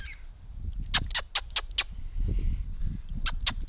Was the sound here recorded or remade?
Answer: recorded